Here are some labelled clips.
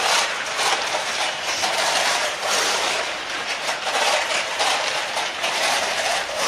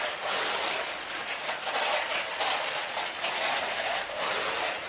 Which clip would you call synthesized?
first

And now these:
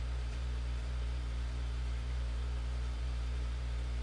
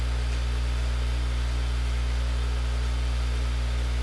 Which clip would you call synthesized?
first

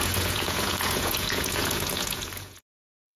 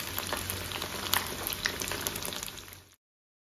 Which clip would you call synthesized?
first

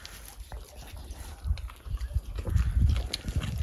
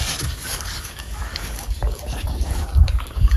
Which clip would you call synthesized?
second